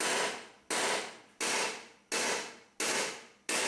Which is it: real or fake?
real